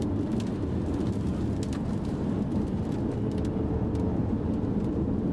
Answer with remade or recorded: recorded